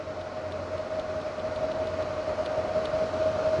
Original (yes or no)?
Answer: yes